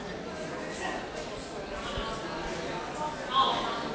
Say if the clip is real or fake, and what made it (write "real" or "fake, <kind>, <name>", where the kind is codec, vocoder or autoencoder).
real